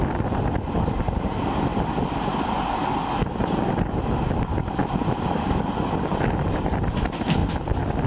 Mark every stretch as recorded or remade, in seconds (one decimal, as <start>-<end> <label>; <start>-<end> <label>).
0.0-6.1 recorded; 6.1-6.7 remade; 6.7-8.1 recorded